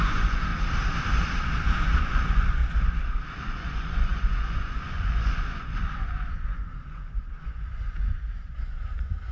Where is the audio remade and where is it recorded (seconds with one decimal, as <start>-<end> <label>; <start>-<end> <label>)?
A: 0.0-0.5 remade; 0.5-2.0 recorded; 2.0-2.6 remade; 2.6-3.4 recorded; 3.4-9.3 remade